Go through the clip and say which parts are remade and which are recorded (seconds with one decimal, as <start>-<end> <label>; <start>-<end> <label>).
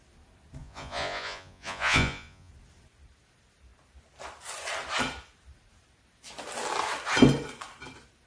0.0-0.6 recorded; 0.6-2.5 remade; 2.5-8.3 recorded